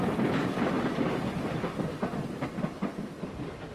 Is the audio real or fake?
real